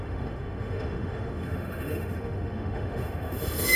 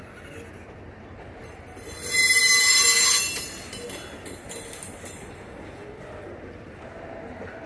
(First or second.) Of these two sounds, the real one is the second